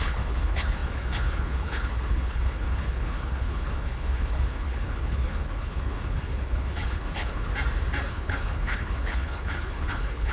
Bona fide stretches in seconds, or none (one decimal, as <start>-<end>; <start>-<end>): 7.5-8.1